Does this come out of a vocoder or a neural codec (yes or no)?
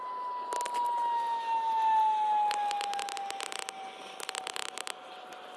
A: no